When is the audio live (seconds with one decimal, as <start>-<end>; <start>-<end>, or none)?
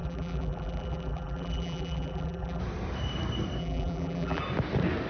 2.6-3.6; 4.4-5.1